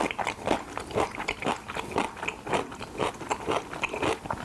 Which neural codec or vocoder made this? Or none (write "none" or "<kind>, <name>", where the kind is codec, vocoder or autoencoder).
none